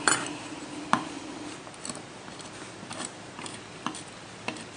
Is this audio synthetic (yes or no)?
no